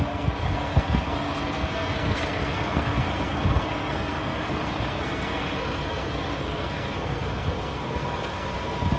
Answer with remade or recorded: remade